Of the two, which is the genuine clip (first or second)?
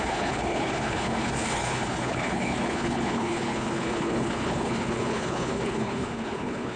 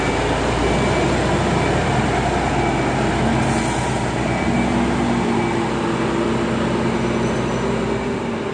second